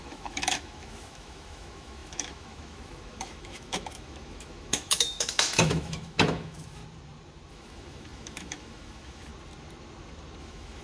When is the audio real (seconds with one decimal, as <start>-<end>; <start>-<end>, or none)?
6.8-7.5; 9.3-10.4